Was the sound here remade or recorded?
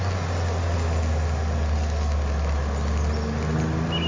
recorded